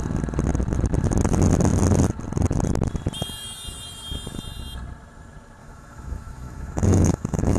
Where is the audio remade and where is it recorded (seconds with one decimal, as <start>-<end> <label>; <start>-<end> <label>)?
0.0-5.6 recorded; 5.6-7.6 remade